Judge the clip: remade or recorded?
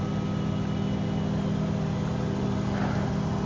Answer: recorded